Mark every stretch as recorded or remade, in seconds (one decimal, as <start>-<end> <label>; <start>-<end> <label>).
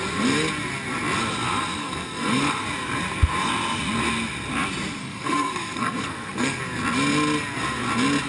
0.0-1.8 recorded; 1.8-2.4 remade; 2.4-5.0 recorded; 5.0-6.6 remade; 6.6-8.3 recorded